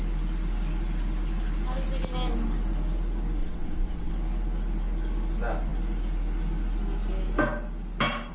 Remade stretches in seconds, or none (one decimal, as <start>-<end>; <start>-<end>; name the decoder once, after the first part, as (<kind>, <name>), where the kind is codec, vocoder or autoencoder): 3.4-4.1 (vocoder, WaveNeXt)